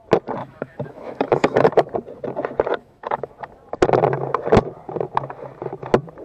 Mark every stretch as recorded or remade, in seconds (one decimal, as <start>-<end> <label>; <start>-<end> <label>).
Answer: 0.0-0.4 recorded; 0.4-1.7 remade; 1.7-2.8 recorded; 2.8-3.3 remade; 3.3-6.2 recorded